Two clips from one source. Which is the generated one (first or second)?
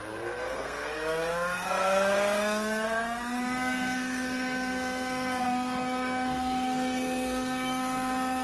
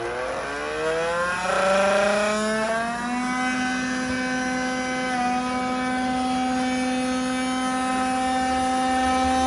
first